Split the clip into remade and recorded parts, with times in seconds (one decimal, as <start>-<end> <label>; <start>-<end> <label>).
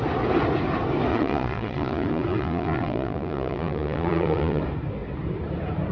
0.0-1.1 recorded; 1.1-4.6 remade; 4.6-5.9 recorded